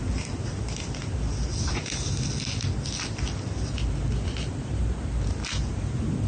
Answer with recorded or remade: recorded